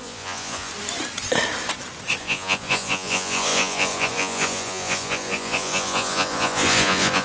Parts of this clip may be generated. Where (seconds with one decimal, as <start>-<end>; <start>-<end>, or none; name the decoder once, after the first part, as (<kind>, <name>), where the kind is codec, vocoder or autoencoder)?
0.0-0.7 (vocoder, Vocos); 2.2-7.2